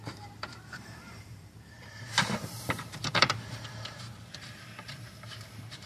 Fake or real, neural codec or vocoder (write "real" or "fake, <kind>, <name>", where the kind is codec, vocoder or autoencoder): fake, vocoder, BigVGAN v2